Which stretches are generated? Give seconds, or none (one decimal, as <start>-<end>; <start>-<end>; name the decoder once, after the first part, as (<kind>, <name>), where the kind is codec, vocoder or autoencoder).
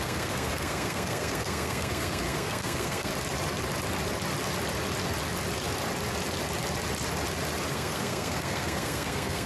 0.0-3.1 (codec, SNAC); 7.7-9.5